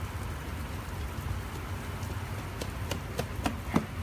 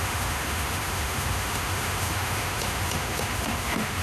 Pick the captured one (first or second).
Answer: first